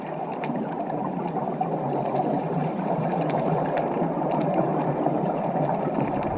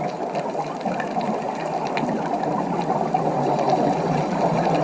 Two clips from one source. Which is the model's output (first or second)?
first